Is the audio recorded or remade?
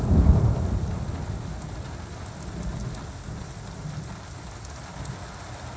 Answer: recorded